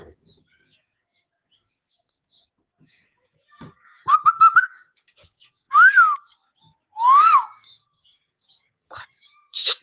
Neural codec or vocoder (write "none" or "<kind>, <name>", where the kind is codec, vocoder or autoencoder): codec, DAC